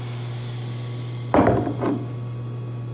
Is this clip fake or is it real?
real